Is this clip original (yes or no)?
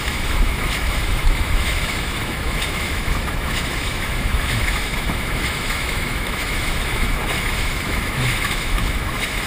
no